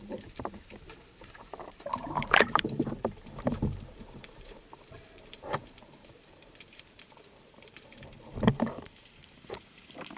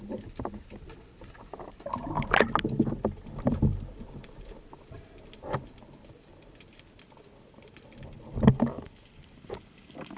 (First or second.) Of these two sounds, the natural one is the second